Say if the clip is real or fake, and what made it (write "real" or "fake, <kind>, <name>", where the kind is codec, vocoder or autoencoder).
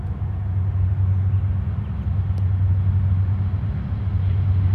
real